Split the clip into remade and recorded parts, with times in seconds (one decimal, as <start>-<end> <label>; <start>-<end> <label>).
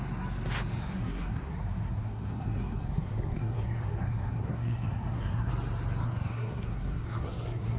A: 0.0-0.8 recorded; 0.8-5.5 remade; 5.5-6.0 recorded; 6.0-7.8 remade